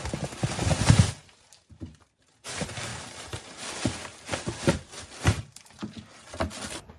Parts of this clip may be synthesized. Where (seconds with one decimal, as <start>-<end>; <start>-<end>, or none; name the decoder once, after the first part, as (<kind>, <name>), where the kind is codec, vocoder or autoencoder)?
2.9-3.5 (vocoder, BigVGAN v2)